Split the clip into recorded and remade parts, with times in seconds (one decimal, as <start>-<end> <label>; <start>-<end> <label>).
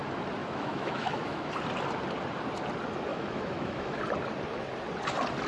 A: 0.0-0.4 recorded; 0.4-1.5 remade; 1.5-3.1 recorded; 3.1-4.0 remade; 4.0-5.5 recorded